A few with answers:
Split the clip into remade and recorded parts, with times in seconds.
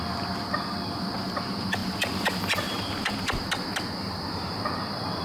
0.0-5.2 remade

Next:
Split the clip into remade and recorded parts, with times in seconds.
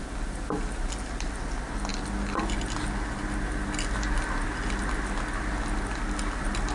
0.0-6.7 recorded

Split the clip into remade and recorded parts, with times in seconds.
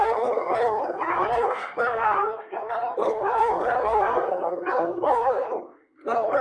0.0-6.4 remade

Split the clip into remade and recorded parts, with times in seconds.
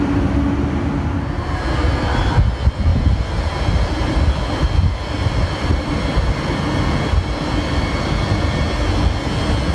0.0-2.9 recorded; 2.9-5.9 remade; 5.9-9.7 recorded